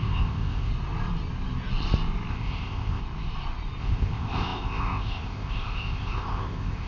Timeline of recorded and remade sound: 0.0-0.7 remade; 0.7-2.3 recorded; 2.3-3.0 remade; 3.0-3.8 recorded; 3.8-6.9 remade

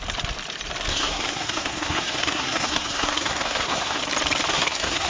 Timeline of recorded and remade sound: 0.0-0.9 recorded; 0.9-4.0 remade; 4.0-4.5 recorded; 4.5-5.1 remade

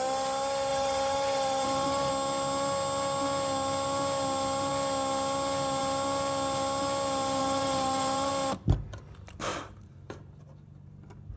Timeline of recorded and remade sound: 0.0-0.7 recorded; 0.7-2.1 remade; 2.1-7.4 recorded; 7.4-8.3 remade; 8.3-9.5 recorded; 9.5-10.9 remade; 10.9-11.4 recorded

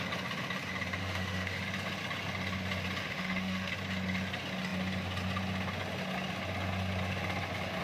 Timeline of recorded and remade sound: 0.0-1.0 recorded; 1.0-1.6 remade; 1.6-3.0 recorded; 3.0-3.7 remade; 3.7-7.8 recorded

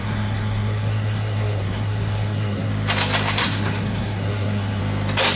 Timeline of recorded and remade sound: 0.0-2.7 remade; 2.7-3.4 recorded; 3.4-4.8 remade; 4.8-5.4 recorded

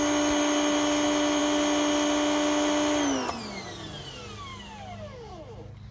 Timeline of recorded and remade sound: 0.0-5.9 recorded

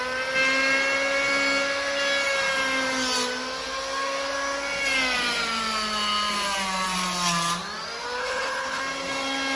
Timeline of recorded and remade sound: 0.0-8.2 recorded; 8.2-8.8 remade; 8.8-9.6 recorded

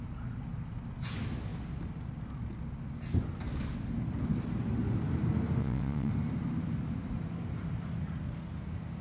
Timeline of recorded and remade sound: 0.0-5.6 recorded; 5.6-6.1 remade; 6.1-9.0 recorded